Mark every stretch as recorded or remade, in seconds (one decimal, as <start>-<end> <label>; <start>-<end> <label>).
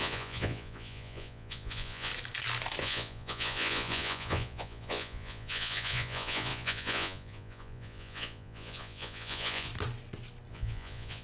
0.0-2.1 remade; 2.1-2.8 recorded; 2.8-9.7 remade; 9.7-10.5 recorded; 10.5-11.2 remade